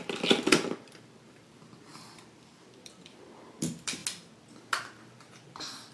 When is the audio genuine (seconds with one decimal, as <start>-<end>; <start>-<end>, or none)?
4.0-5.2